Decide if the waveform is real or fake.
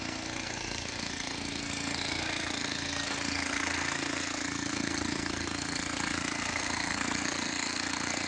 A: fake